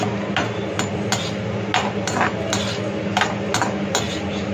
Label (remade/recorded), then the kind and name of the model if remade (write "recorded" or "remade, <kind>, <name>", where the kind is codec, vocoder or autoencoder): recorded